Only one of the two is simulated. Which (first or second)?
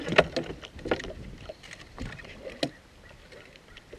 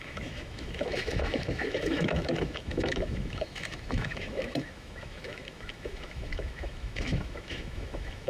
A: second